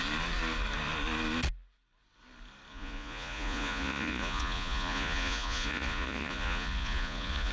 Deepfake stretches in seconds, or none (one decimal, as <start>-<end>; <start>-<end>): 2.7-7.5